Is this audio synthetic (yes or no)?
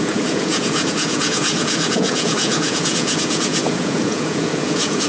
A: yes